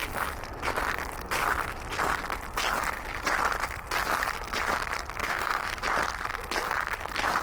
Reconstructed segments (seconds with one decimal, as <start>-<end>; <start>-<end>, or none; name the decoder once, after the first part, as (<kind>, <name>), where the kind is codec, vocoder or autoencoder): 5.2-5.8 (autoencoder, DAC-VAE)